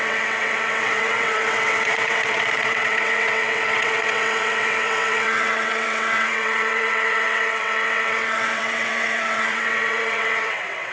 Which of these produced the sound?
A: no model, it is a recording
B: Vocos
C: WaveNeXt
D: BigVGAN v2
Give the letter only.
C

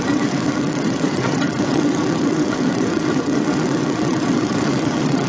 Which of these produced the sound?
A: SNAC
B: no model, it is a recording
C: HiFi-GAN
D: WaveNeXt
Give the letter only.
D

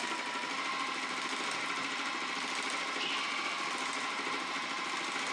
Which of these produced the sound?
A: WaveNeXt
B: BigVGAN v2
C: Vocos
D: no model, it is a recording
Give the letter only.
D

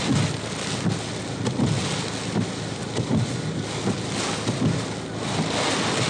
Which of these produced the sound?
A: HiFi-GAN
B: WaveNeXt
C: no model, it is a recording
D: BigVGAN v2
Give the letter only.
C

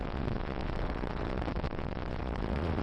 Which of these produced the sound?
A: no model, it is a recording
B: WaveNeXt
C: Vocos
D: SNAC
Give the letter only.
B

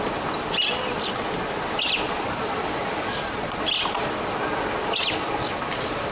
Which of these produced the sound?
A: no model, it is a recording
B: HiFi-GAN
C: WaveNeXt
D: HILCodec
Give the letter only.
A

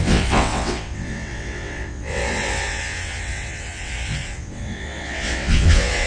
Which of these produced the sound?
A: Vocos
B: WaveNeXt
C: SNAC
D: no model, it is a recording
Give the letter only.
B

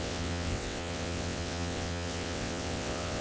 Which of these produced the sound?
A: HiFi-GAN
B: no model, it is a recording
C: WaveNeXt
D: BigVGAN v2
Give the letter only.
C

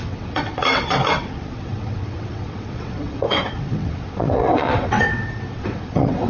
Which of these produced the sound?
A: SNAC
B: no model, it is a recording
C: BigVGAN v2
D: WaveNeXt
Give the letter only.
D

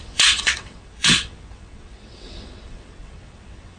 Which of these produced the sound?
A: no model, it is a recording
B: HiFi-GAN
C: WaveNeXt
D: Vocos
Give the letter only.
C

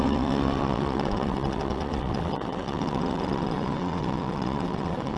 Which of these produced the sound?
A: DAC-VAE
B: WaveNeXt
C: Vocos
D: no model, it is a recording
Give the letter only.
B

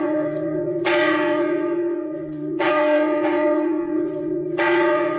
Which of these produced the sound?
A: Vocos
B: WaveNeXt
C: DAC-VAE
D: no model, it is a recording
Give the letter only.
B